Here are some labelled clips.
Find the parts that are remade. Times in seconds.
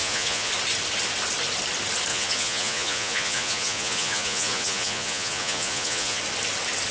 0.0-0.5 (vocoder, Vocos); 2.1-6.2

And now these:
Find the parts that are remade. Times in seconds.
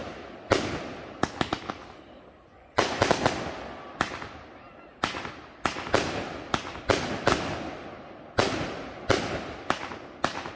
2.5-3.0 (vocoder, Vocos)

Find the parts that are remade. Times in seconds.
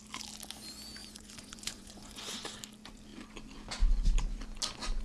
1.0-2.4 (vocoder, Vocos)